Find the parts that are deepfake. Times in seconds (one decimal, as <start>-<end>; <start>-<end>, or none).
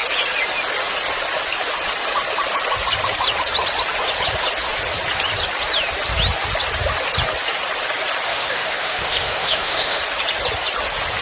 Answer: 8.3-10.0